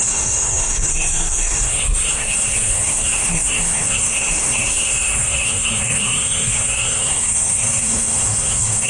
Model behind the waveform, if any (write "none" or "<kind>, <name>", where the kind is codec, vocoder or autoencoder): codec, SNAC